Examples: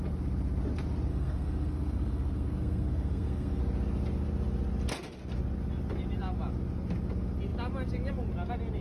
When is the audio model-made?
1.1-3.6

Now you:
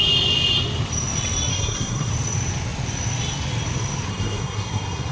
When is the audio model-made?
1.5-2.1; 4.1-5.1

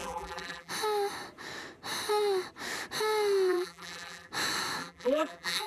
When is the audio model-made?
0.0-0.7; 3.5-4.3; 4.8-5.7